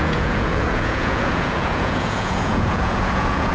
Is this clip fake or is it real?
fake